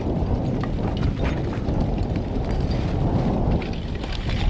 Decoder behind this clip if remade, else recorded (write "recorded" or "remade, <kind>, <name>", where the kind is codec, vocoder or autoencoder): recorded